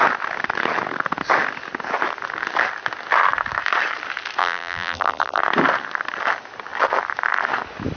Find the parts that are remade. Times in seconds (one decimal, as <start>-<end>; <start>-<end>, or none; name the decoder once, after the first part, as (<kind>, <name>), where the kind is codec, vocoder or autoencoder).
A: 4.4-5.4 (vocoder, BigVGAN v2)